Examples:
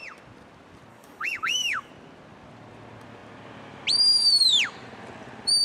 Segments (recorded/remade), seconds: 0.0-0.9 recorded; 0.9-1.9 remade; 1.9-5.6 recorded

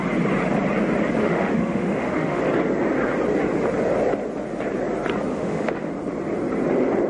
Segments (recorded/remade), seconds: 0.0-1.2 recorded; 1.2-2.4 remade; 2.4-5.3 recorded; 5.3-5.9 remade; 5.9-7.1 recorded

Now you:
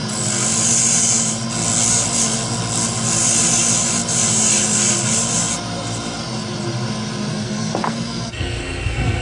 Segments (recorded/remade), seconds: 0.0-7.3 recorded; 7.3-9.2 remade